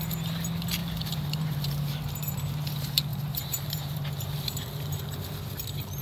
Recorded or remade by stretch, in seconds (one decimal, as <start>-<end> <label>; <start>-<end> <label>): 0.0-0.8 recorded; 0.8-2.5 remade; 2.5-3.1 recorded; 3.1-4.5 remade; 4.5-6.0 recorded